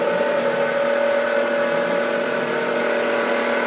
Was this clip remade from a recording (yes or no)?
no